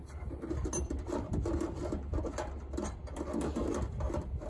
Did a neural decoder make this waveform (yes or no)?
no